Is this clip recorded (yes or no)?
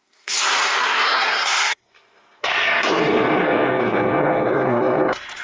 no